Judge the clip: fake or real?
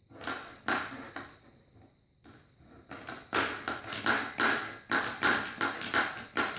real